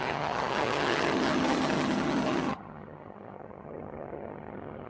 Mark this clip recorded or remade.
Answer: remade